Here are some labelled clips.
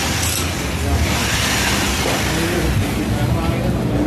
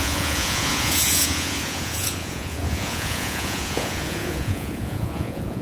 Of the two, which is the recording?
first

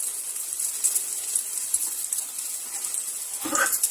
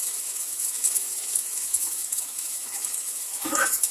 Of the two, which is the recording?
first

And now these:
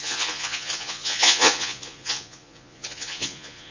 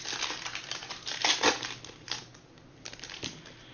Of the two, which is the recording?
second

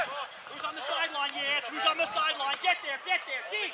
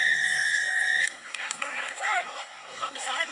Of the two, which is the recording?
first